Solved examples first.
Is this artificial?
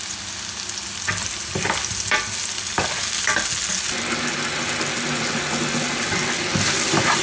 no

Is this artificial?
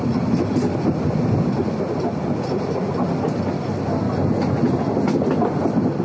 no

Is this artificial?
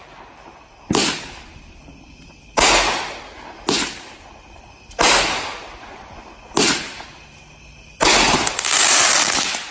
no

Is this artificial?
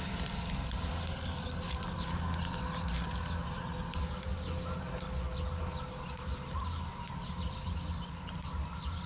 no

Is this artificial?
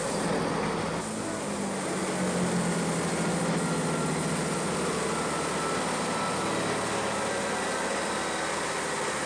no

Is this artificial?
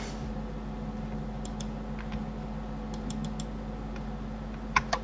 no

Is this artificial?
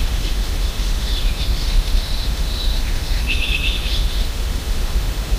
yes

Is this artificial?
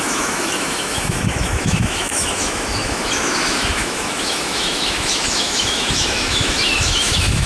yes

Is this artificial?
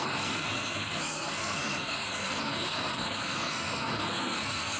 yes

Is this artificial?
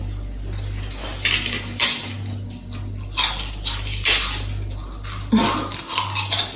no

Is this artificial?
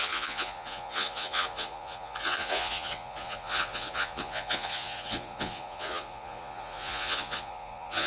yes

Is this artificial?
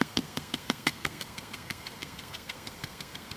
yes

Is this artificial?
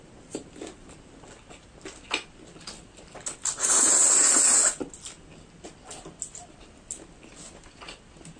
no